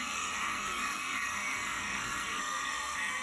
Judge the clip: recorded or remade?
remade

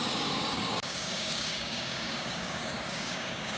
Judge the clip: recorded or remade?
remade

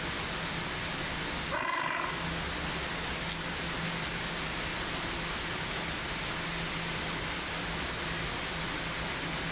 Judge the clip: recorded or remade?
recorded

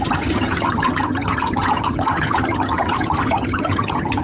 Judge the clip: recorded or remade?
remade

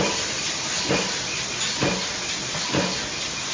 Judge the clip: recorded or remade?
recorded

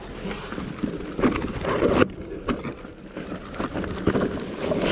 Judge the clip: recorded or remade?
recorded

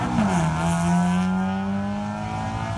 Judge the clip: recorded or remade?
recorded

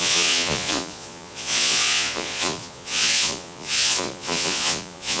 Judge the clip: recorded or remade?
remade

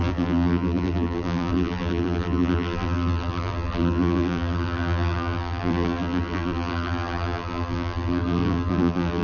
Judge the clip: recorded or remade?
remade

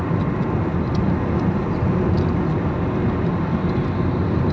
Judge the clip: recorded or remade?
recorded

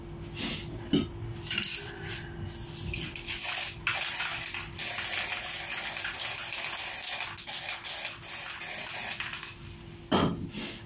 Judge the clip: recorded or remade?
recorded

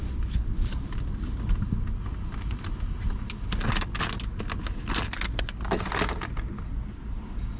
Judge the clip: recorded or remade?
recorded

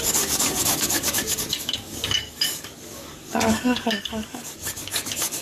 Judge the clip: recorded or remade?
remade